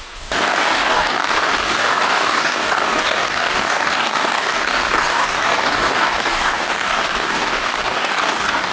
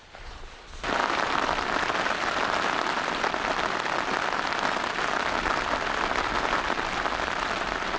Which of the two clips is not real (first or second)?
first